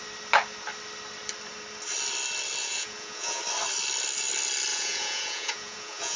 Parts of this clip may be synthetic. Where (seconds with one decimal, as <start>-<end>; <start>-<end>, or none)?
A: 2.6-3.4; 4.7-6.2